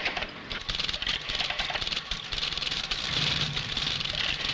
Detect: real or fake fake